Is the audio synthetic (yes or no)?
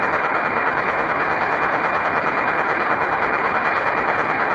yes